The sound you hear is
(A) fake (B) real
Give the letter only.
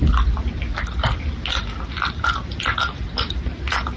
B